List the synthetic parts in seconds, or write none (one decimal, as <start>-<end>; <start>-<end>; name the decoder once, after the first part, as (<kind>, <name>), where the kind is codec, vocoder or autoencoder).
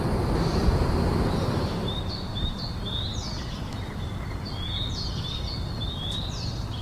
0.0-0.6 (vocoder, BigVGAN v2); 1.4-3.2; 5.8-6.8